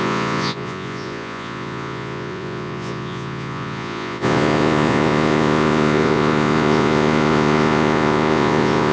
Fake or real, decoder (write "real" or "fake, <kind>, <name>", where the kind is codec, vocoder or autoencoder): fake, vocoder, Vocos